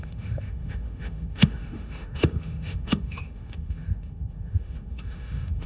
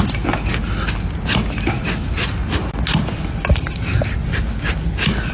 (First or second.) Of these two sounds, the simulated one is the first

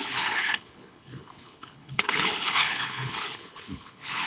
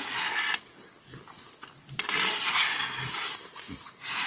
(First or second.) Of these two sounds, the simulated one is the first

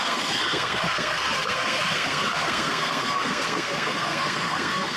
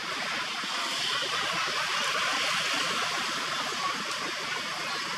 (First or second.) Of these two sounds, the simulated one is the first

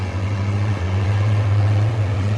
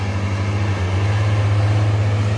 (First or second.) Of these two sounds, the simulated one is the first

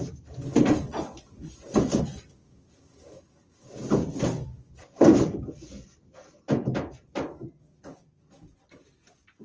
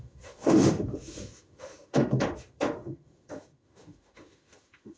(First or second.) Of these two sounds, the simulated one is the second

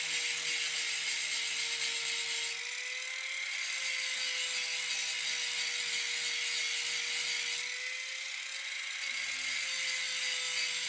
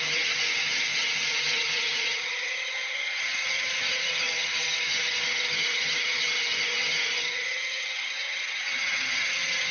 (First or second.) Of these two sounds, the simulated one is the second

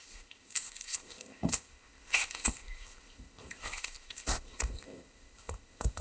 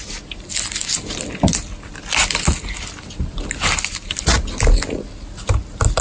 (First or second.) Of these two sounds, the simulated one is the first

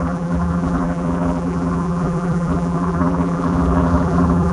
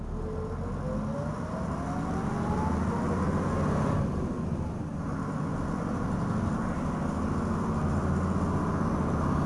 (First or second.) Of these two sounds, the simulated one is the first